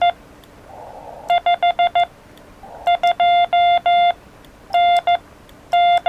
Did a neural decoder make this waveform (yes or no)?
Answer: no